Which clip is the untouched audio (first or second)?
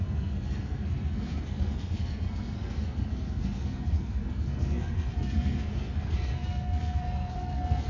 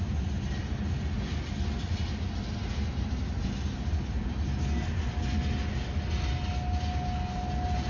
second